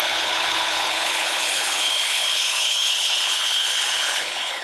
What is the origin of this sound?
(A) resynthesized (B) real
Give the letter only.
A